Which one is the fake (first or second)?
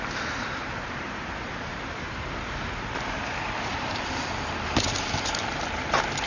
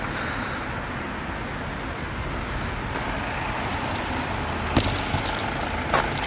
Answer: first